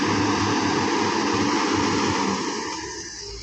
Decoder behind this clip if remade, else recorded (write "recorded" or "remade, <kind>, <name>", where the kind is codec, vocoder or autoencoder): recorded